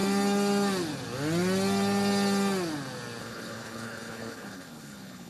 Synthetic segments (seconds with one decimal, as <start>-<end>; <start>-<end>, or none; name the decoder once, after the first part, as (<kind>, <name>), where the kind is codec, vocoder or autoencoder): 3.2-5.3 (codec, HILCodec)